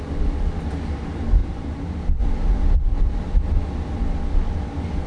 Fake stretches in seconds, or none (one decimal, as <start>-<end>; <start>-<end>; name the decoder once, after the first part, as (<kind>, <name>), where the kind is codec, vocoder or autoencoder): 1.4-2.2 (vocoder, BigVGAN v2); 2.9-3.9